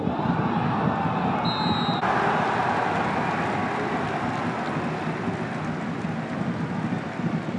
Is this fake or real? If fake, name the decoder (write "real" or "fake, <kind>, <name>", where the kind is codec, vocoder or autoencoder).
real